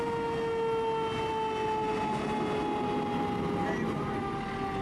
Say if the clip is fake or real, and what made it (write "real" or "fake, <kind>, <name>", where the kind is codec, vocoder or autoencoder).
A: real